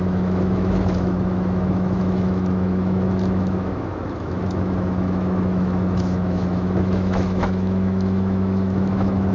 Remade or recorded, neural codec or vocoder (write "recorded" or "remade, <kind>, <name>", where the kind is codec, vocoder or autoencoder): remade, autoencoder, DAC-VAE